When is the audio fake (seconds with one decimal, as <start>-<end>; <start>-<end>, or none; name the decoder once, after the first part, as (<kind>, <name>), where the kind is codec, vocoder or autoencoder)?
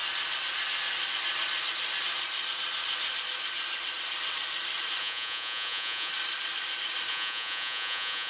5.0-6.1 (vocoder, Vocos); 7.1-8.3